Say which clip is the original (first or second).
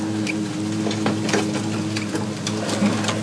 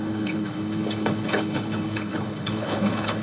first